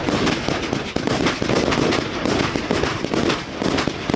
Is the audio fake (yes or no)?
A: yes